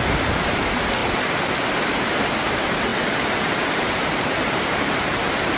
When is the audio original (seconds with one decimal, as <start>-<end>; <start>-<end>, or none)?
1.0-1.8